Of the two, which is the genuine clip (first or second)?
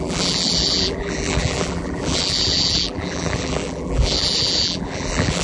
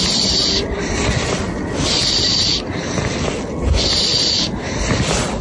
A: second